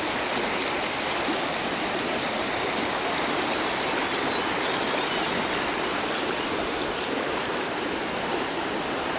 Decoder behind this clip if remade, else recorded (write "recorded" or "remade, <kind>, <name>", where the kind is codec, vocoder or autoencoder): recorded